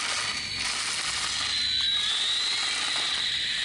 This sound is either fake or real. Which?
real